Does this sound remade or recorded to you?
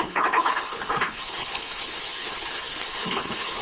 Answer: remade